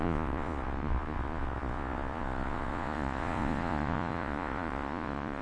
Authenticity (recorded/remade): remade